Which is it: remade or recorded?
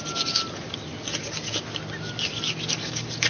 recorded